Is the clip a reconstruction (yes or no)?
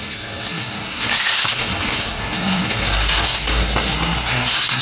yes